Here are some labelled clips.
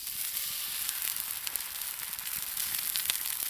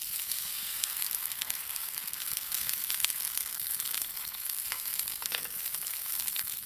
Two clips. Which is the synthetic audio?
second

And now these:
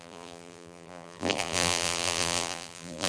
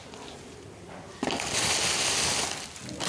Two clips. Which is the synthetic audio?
first